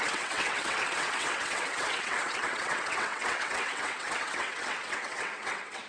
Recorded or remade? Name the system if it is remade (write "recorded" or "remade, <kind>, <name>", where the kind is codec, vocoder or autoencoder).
remade, vocoder, WaveNeXt